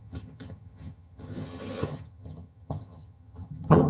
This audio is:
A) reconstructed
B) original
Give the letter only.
A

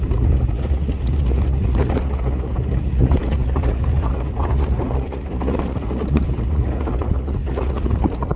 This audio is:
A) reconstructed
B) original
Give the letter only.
A